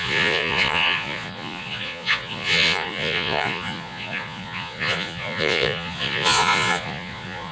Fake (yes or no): yes